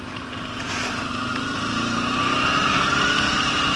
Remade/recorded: remade